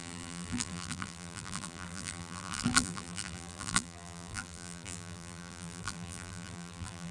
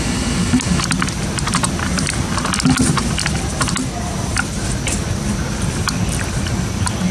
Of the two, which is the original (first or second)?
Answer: second